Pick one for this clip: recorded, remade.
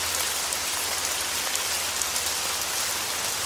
recorded